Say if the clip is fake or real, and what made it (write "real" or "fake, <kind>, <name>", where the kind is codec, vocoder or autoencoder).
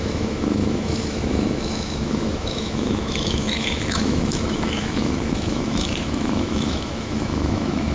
fake, autoencoder, DAC-VAE